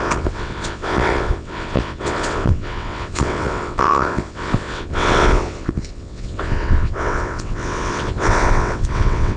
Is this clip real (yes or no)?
no